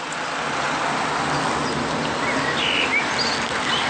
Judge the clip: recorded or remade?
recorded